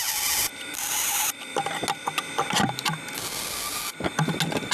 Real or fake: real